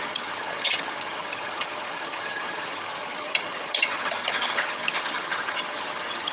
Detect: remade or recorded remade